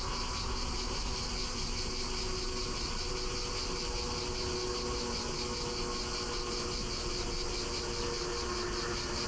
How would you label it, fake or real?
real